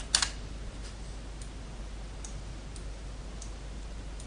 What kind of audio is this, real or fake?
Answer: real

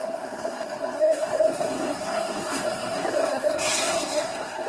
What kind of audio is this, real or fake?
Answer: fake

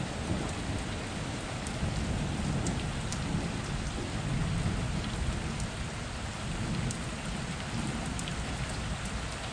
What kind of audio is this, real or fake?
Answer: real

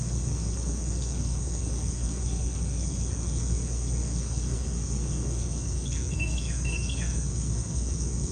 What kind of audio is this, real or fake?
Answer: fake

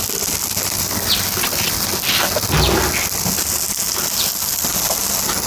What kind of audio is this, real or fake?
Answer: real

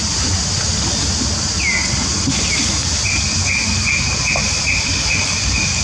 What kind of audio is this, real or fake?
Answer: real